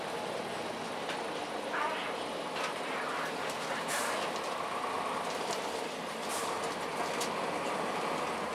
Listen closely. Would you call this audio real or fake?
real